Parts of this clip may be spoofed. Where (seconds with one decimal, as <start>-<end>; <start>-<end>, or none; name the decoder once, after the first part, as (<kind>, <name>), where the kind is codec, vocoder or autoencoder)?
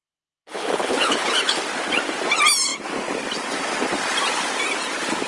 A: 0.0-1.6 (codec, HILCodec)